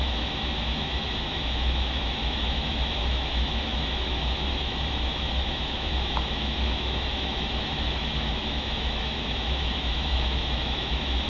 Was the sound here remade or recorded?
remade